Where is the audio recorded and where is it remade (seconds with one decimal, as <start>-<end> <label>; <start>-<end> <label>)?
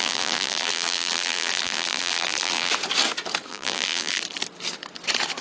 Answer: 0.0-2.7 remade; 2.7-3.5 recorded; 3.5-4.2 remade; 4.2-5.4 recorded